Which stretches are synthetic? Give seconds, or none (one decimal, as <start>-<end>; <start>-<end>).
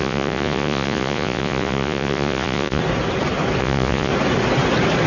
0.0-2.8; 3.6-4.1